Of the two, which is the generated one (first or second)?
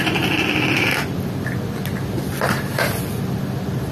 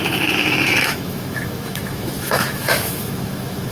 second